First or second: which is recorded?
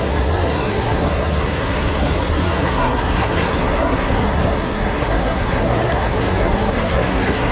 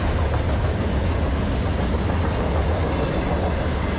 second